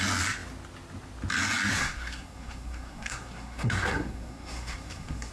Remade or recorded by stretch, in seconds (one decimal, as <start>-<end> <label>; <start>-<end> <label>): 0.0-1.7 recorded; 1.7-5.3 remade